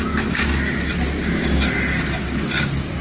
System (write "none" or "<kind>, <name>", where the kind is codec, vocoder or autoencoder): none